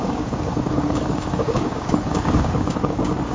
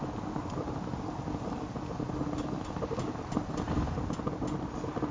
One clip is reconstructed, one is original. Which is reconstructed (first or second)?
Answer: first